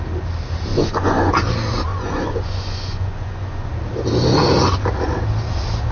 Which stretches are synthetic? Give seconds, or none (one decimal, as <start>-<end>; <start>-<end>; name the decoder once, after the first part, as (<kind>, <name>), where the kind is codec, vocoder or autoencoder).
0.7-1.3 (vocoder, Vocos); 1.9-3.7